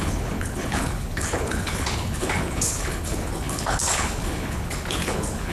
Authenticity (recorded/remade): remade